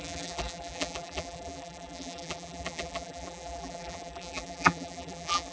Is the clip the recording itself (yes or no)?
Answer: no